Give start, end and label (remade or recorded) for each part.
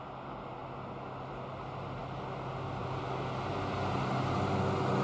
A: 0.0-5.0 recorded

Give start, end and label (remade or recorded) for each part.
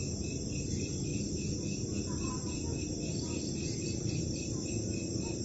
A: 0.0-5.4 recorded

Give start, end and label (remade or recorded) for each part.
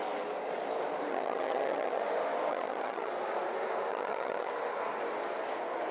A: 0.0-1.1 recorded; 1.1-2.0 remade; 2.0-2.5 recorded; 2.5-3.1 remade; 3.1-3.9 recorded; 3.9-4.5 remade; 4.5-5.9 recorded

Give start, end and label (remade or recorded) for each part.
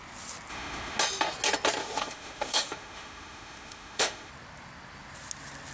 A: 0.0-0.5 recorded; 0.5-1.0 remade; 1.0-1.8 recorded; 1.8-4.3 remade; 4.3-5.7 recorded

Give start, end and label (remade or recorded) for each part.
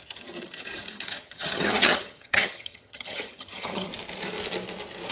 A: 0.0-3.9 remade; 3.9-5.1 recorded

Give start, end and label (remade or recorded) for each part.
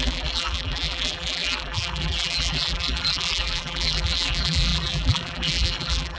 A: 0.0-6.2 remade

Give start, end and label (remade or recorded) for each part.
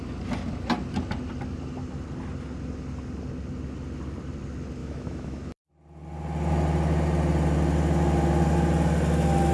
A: 0.0-4.8 recorded; 4.8-5.7 remade; 5.7-9.5 recorded